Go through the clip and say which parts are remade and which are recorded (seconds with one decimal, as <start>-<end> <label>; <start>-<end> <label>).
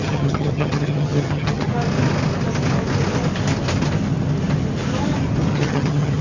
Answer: 0.0-1.7 remade; 1.7-5.5 recorded; 5.5-6.2 remade